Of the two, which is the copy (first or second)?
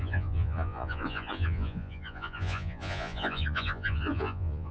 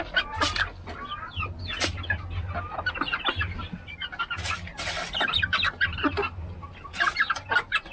first